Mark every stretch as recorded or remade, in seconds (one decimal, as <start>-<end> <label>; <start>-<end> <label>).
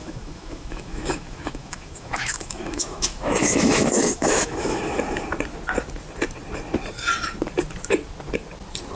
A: 0.0-4.8 remade; 4.8-9.0 recorded